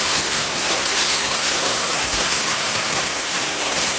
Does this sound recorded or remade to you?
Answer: remade